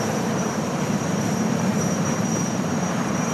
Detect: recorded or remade remade